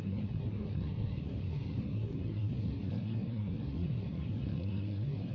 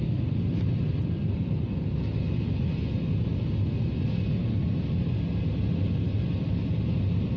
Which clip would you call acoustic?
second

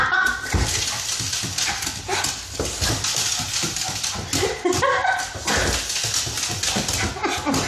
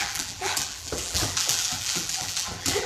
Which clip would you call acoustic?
first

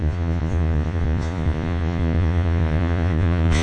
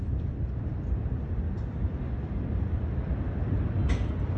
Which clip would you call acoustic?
second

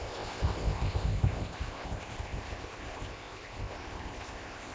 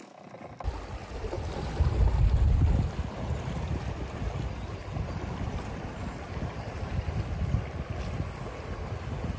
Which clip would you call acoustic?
second